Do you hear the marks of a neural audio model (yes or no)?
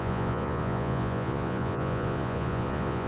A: yes